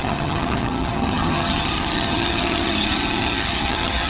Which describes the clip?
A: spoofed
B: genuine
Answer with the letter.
A